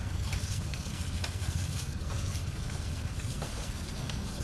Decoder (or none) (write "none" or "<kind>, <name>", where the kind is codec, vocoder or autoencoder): codec, SNAC